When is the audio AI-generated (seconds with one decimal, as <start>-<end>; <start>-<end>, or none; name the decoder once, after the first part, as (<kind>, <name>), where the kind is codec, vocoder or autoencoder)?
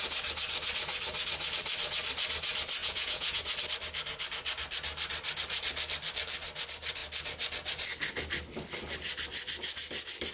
2.8-3.4 (vocoder, Vocos)